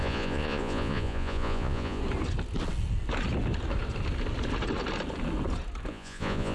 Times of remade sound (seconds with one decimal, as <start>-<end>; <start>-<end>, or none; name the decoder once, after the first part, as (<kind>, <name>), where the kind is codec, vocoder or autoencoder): 0.0-2.0 (vocoder, Vocos); 5.9-6.5